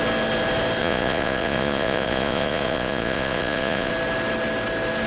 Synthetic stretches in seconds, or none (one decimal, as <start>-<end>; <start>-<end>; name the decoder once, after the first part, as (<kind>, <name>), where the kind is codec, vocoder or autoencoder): 0.8-3.9 (vocoder, Vocos)